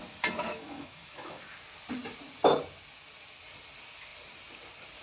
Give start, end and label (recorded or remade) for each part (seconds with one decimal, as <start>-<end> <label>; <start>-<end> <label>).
0.0-0.4 recorded; 0.4-1.4 remade; 1.4-5.0 recorded